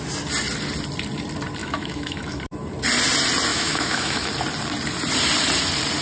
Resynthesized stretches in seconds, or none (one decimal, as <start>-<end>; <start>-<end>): 1.6-2.4; 3.5-4.3